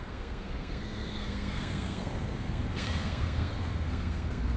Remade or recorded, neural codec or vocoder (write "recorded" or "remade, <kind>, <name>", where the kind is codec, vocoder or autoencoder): remade, codec, SNAC